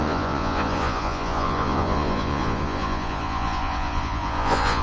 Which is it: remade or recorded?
remade